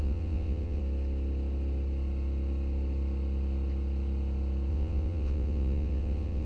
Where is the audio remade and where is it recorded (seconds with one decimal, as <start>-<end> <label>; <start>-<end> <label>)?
0.0-0.8 remade; 0.8-4.7 recorded; 4.7-6.5 remade